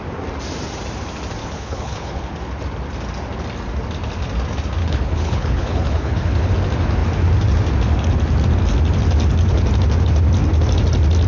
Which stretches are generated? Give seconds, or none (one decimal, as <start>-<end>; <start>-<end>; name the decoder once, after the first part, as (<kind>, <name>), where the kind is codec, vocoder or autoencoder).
1.4-2.3 (codec, HILCodec); 4.8-6.5

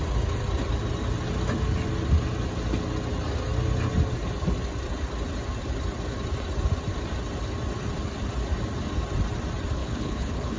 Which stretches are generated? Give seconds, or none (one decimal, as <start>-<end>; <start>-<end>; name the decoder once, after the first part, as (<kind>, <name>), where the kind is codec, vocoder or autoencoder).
9.8-10.6 (codec, HILCodec)

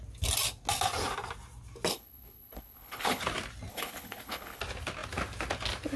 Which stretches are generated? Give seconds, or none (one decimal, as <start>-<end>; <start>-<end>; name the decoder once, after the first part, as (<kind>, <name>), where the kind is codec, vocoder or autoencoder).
1.9-3.2 (codec, HILCodec); 3.7-4.6